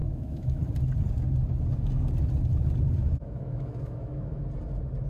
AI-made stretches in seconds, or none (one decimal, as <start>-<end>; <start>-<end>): 0.0-0.6; 3.0-4.4